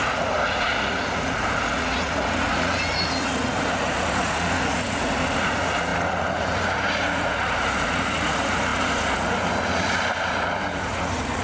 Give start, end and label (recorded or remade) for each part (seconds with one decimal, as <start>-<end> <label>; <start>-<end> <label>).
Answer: 0.0-11.4 remade

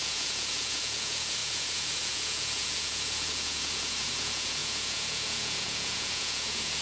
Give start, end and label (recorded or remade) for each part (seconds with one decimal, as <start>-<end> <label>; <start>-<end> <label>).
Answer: 0.0-6.8 remade